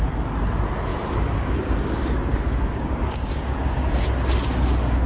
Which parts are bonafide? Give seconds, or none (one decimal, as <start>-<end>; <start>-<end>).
0.0-0.9; 4.0-5.1